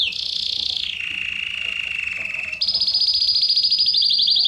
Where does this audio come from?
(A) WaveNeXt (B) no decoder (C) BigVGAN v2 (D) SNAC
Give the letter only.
B